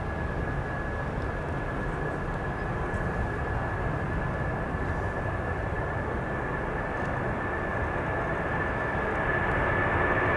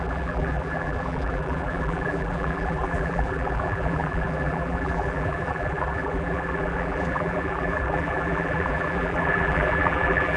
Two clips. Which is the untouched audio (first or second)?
first